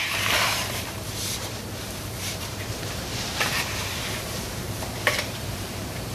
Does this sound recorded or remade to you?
remade